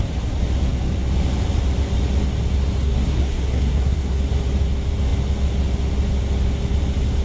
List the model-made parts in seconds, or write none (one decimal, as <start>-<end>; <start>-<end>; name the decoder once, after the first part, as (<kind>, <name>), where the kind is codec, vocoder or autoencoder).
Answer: 2.8-4.2 (codec, SNAC)